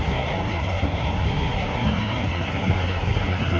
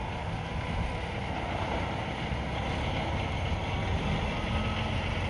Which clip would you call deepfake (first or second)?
first